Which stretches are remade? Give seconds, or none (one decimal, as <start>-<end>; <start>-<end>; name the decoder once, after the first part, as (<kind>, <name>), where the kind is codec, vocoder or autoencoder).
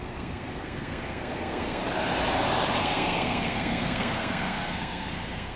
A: 0.0-1.8 (codec, SNAC); 2.8-5.6